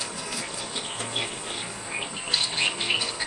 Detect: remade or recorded remade